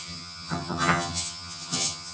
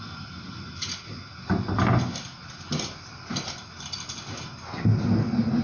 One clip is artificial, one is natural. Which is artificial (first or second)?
first